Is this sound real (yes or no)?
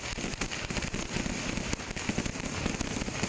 yes